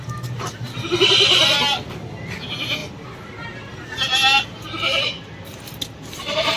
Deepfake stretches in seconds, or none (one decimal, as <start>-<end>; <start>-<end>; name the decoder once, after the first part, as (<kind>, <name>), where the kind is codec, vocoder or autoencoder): none